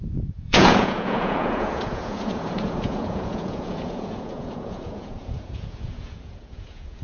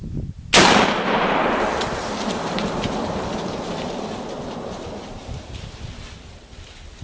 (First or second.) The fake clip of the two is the first